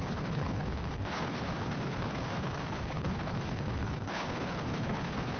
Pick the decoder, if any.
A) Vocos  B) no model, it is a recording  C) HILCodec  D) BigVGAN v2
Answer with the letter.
C